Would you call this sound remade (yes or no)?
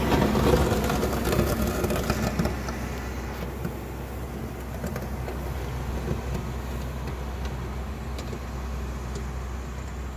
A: no